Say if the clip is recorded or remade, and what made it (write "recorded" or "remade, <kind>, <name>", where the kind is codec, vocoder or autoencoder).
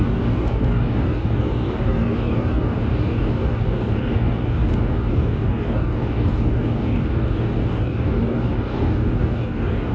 remade, codec, DAC